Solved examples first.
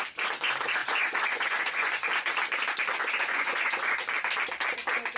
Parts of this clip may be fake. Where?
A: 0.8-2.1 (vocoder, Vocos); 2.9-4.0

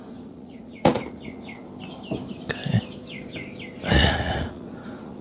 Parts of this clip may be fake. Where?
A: 0.0-1.6 (vocoder, Vocos); 3.8-5.2

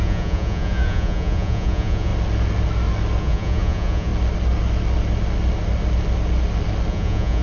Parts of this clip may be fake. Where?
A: 0.0-2.1 (vocoder, Vocos); 3.2-4.1; 6.9-7.4